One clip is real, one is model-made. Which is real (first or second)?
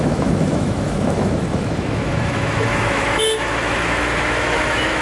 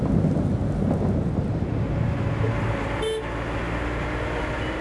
second